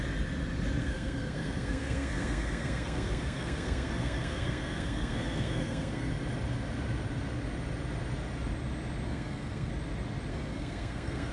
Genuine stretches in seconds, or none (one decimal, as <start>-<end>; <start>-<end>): 0.0-0.8; 6.1-9.1; 9.7-10.3